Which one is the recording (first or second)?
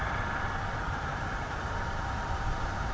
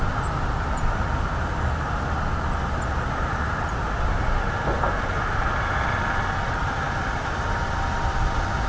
second